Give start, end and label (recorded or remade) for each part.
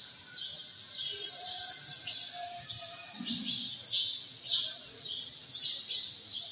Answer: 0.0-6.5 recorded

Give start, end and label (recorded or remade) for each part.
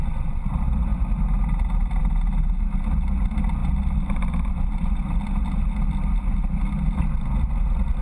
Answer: 0.0-8.0 recorded